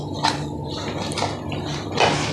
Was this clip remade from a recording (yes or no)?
no